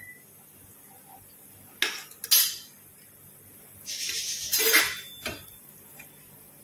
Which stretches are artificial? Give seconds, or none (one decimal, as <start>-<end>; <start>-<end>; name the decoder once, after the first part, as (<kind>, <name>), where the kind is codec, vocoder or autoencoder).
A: none